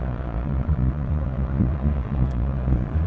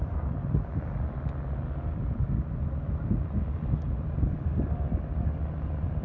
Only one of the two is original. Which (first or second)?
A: second